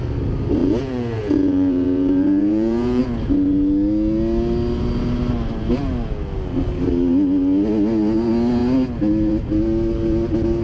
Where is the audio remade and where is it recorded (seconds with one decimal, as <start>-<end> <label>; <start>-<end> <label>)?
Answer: 0.0-0.6 recorded; 0.6-3.0 remade; 3.0-10.6 recorded